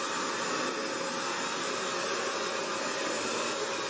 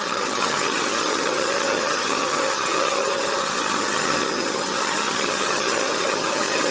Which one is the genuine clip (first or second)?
first